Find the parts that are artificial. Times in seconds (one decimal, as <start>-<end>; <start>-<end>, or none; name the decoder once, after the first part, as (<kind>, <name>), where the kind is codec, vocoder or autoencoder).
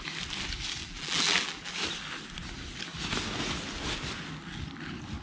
0.8-1.7 (vocoder, BigVGAN v2)